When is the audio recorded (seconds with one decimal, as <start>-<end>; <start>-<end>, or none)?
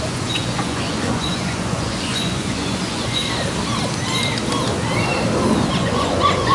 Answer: 3.2-5.7